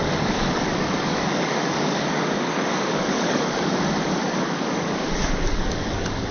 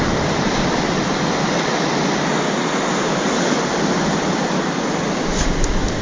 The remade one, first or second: first